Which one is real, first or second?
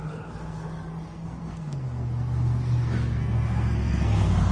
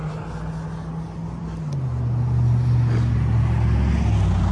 second